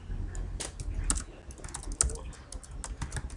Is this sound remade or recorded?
recorded